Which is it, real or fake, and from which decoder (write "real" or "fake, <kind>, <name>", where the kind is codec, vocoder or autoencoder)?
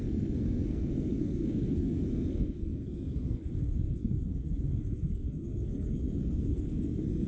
fake, codec, SNAC